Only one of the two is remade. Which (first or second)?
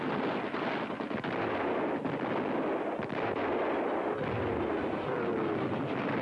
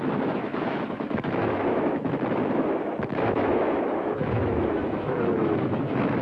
second